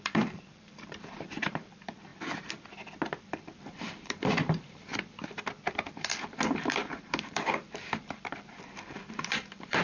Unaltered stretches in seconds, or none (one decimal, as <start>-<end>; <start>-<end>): 2.1-3.2; 4.9-5.7